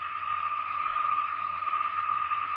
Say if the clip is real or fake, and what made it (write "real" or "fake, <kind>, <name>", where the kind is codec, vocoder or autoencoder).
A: fake, codec, SNAC